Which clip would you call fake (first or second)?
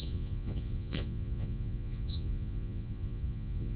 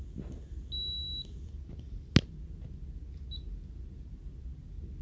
first